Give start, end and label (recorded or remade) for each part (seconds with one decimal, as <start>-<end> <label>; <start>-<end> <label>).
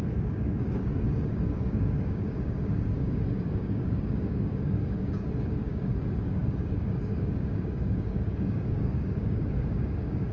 0.0-10.3 remade